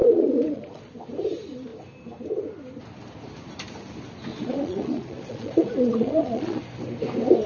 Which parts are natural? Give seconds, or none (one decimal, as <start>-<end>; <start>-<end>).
0.9-4.3; 6.6-7.5